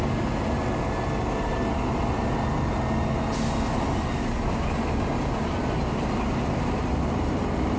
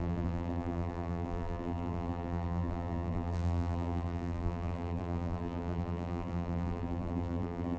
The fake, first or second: second